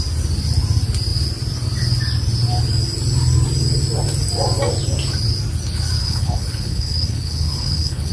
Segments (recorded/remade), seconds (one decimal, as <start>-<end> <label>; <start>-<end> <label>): 0.0-6.0 recorded; 6.0-8.1 remade